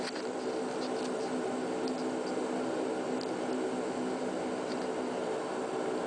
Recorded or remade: recorded